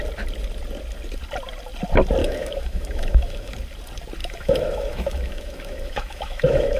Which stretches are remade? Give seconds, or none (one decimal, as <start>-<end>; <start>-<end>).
2.2-3.5; 4.2-6.8